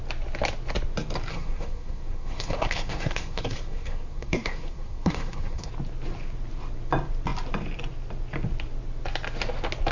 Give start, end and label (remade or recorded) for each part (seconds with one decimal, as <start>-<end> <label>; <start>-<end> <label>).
0.0-1.3 recorded; 1.3-5.7 remade; 5.7-9.9 recorded

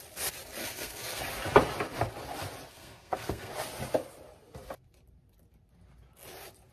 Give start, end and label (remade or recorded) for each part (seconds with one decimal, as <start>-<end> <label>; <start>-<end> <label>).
0.0-0.6 recorded; 0.6-1.2 remade; 1.2-2.7 recorded; 2.7-3.5 remade; 3.5-6.7 recorded

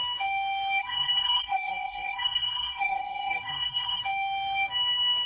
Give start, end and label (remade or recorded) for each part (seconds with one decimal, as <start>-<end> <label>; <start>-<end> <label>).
0.0-0.8 recorded; 0.8-4.0 remade; 4.0-5.3 recorded

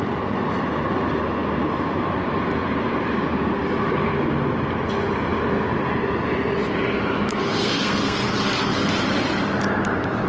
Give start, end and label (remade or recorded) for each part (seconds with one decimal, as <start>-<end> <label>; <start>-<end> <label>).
0.0-7.6 recorded; 7.6-8.3 remade; 8.3-10.3 recorded

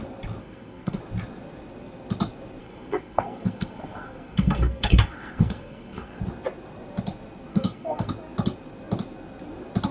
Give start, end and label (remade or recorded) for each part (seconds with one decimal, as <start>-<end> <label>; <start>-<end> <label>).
0.0-0.4 recorded; 0.4-1.0 remade; 1.0-2.6 recorded; 2.6-6.2 remade; 6.2-7.5 recorded; 7.5-8.1 remade; 8.1-9.9 recorded

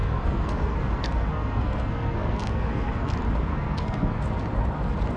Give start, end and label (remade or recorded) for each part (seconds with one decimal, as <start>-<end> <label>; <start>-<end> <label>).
0.0-3.1 remade; 3.1-3.5 recorded; 3.5-4.2 remade; 4.2-5.2 recorded

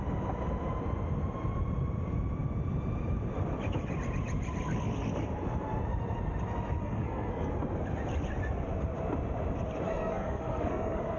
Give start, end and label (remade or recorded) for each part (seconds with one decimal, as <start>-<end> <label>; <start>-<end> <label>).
0.0-6.8 recorded; 6.8-7.5 remade; 7.5-9.9 recorded; 9.9-11.2 remade